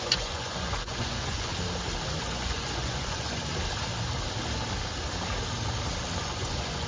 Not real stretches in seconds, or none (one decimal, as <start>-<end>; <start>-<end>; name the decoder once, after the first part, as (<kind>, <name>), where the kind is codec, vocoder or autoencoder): 0.0-1.5 (vocoder, Vocos); 2.1-3.5; 6.2-6.9